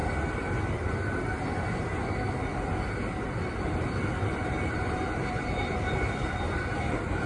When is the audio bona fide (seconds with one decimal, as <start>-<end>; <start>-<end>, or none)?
0.9-2.0; 6.4-7.3